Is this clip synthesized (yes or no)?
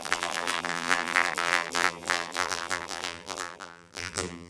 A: yes